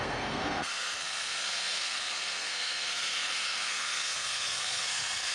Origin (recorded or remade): remade